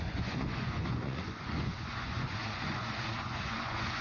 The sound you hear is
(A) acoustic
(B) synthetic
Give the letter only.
B